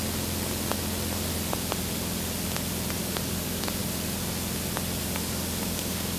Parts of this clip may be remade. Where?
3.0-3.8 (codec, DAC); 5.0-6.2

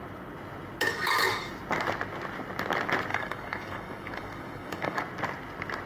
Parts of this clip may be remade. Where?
0.9-1.5 (codec, DAC); 3.1-5.0